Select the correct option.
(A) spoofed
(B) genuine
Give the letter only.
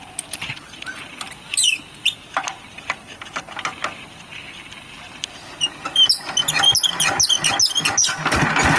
B